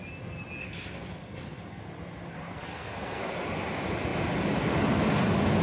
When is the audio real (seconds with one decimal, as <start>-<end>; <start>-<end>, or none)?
0.0-0.6; 1.8-2.3; 3.3-5.6